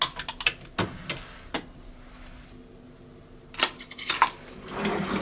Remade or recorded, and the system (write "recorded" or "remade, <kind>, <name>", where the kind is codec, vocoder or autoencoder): recorded